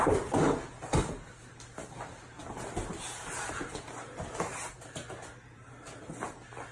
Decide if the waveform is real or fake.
real